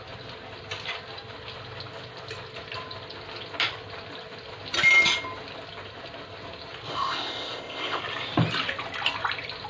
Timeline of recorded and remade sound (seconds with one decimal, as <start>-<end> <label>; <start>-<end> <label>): 0.0-6.9 recorded; 6.9-8.0 remade; 8.0-9.7 recorded